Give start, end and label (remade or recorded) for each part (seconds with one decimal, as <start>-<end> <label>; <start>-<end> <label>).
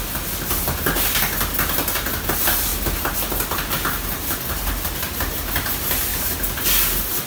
0.0-7.3 recorded